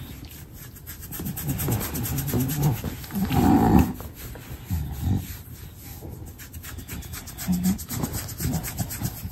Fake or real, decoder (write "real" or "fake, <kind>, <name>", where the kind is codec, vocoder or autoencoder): real